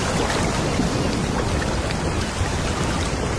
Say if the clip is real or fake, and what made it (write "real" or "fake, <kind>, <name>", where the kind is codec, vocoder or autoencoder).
real